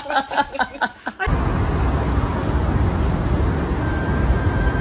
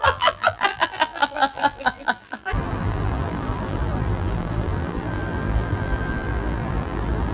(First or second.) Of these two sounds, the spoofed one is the second